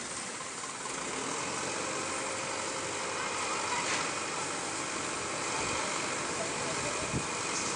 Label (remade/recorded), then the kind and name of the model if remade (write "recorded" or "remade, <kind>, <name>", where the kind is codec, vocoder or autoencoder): recorded